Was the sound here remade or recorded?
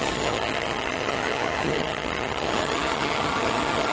remade